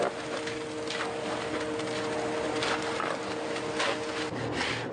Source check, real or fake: real